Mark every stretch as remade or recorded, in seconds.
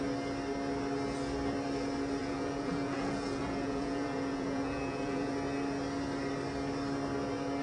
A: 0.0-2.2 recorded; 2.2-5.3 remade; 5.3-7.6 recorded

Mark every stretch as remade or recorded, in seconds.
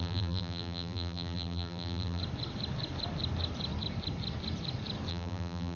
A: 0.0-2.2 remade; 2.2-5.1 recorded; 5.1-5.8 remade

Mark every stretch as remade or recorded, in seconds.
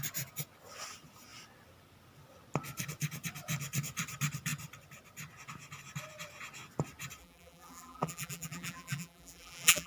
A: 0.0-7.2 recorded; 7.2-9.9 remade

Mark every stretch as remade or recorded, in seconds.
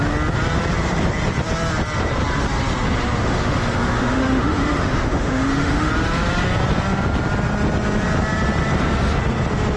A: 0.0-3.2 recorded; 3.2-5.9 remade; 5.9-9.8 recorded